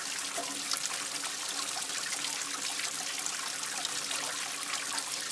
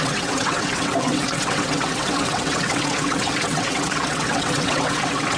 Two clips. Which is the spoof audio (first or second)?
second